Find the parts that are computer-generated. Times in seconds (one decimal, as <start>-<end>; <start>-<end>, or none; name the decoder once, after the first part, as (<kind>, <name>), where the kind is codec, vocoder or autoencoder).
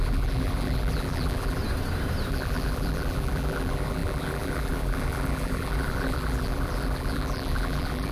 0.0-1.6 (vocoder, BigVGAN v2); 2.3-8.1